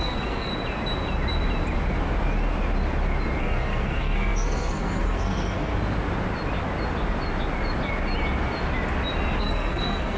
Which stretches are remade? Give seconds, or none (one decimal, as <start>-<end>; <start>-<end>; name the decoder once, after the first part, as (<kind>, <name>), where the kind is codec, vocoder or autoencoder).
0.0-0.5 (codec, SNAC); 3.4-5.7; 9.4-10.2